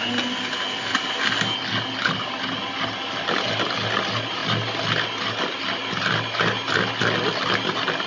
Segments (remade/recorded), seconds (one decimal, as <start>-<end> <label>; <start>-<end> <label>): 0.0-8.1 recorded

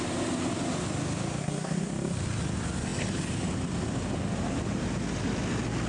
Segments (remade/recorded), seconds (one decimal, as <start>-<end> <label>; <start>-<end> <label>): 0.0-1.4 recorded; 1.4-1.9 remade; 1.9-5.9 recorded

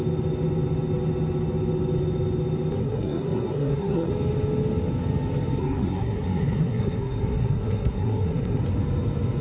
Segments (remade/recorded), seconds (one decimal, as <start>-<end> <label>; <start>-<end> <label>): 0.0-2.8 recorded; 2.8-4.1 remade; 4.1-5.6 recorded; 5.6-8.6 remade; 8.6-9.4 recorded